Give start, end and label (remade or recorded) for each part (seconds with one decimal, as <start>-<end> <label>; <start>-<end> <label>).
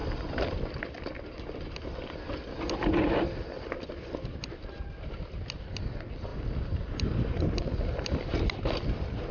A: 0.0-9.3 recorded